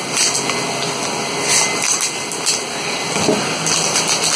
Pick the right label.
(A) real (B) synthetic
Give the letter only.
A